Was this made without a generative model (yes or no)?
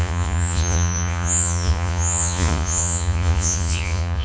no